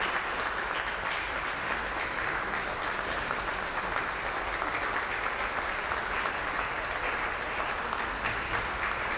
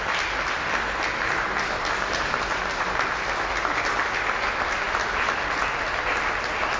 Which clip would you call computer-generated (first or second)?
first